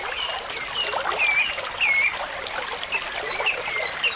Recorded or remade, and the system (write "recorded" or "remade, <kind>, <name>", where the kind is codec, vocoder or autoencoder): recorded